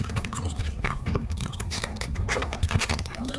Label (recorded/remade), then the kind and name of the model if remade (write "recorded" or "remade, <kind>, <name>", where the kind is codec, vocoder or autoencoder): remade, codec, SNAC